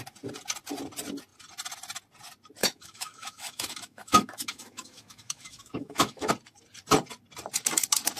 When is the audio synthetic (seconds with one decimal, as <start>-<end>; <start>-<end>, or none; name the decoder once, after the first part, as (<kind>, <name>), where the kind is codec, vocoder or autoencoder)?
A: 2.6-6.3 (autoencoder, DAC-VAE)